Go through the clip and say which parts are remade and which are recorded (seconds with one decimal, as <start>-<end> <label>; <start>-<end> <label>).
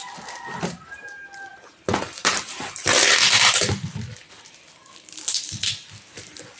0.0-6.6 recorded